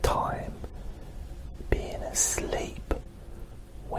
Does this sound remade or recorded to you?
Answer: recorded